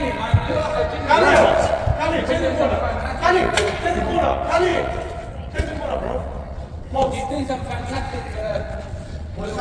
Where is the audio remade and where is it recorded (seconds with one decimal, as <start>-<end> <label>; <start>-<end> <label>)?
0.0-0.8 remade; 0.8-1.5 recorded; 1.5-1.9 remade; 1.9-3.0 recorded; 3.0-9.6 remade